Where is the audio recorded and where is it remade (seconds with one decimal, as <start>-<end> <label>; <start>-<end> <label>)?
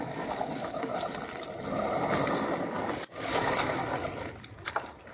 0.0-0.9 remade; 0.9-2.6 recorded; 2.6-3.8 remade; 3.8-5.1 recorded